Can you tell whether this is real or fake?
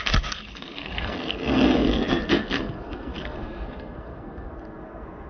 fake